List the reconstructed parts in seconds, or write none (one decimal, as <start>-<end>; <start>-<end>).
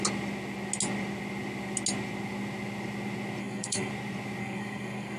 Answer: 3.4-3.9; 4.4-5.2